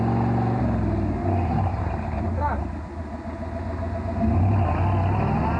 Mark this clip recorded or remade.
recorded